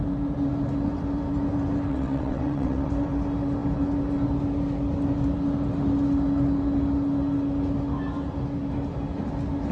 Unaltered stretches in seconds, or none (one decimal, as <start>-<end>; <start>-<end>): 0.0-1.9; 2.9-9.7